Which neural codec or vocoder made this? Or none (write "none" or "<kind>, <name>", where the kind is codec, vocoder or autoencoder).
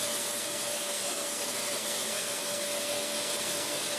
codec, SNAC